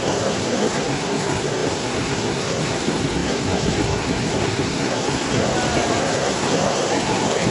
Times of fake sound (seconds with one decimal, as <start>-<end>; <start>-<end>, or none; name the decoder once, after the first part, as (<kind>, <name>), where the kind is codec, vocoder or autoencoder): 0.0-5.5 (codec, SNAC); 6.0-7.5